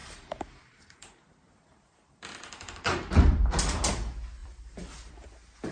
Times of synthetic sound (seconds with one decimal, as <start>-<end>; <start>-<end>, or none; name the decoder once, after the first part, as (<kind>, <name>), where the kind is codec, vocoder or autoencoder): 0.0-3.1 (vocoder, BigVGAN v2); 4.4-5.1